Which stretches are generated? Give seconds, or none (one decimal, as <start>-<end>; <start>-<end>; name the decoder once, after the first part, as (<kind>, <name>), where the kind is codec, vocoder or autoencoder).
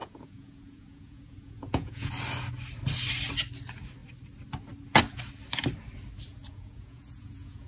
0.0-2.1 (vocoder, Vocos); 6.3-7.7